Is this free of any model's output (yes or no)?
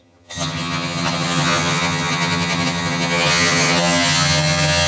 no